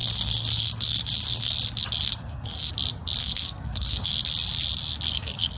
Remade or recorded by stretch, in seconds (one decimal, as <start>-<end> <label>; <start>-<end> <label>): 0.0-1.5 remade; 1.5-2.0 recorded; 2.0-2.7 remade; 2.7-3.2 recorded; 3.2-4.1 remade; 4.1-5.6 recorded